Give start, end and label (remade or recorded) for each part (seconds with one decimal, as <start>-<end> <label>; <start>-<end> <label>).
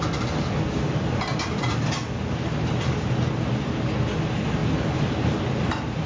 0.0-6.1 recorded